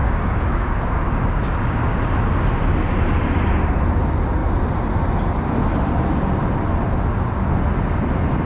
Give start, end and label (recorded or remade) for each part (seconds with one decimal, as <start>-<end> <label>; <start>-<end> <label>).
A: 0.0-2.0 remade; 2.0-8.4 recorded